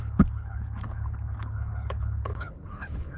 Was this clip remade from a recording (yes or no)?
yes